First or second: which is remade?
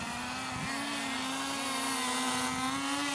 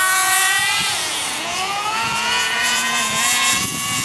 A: second